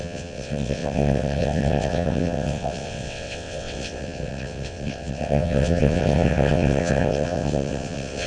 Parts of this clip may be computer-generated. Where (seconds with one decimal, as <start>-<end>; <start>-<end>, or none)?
0.0-8.3